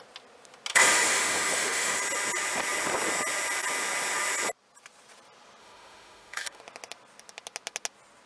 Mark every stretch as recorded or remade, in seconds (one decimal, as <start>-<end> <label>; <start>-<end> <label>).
0.0-0.7 recorded; 0.7-2.0 remade; 2.0-5.6 recorded; 5.6-6.6 remade; 6.6-8.3 recorded